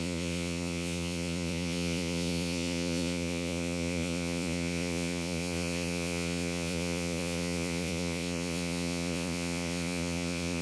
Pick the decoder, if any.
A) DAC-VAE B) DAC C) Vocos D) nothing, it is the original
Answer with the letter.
C